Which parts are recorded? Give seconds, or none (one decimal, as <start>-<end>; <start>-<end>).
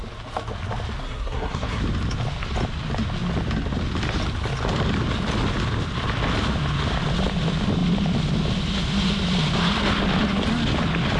0.0-1.0; 1.8-11.2